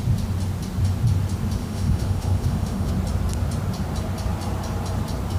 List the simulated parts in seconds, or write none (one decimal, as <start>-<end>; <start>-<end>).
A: 1.6-2.9

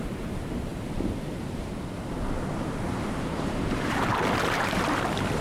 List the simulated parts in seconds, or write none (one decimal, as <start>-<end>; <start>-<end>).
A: 0.0-5.4

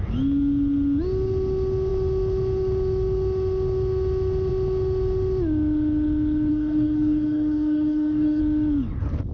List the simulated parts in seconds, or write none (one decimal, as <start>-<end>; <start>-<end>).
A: 6.5-8.4